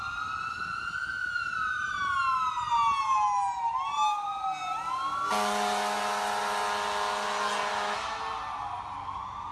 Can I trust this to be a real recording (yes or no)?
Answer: yes